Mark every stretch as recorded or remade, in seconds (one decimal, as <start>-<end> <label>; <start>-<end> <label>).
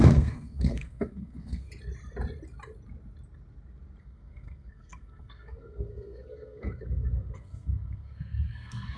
0.0-1.7 remade; 1.7-4.0 recorded; 4.0-9.0 remade